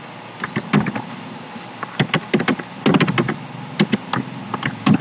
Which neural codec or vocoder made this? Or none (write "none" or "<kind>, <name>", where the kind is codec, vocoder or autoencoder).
none